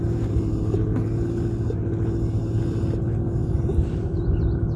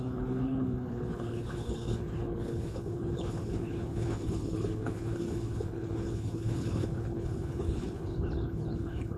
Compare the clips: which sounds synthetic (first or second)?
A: second